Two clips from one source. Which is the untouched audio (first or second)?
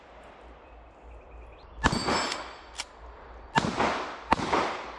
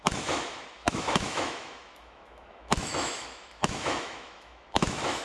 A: first